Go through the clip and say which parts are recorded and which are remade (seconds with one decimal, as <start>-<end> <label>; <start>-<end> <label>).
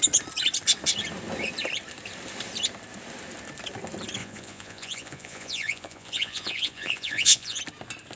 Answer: 0.0-4.2 recorded; 4.2-7.6 remade; 7.6-8.2 recorded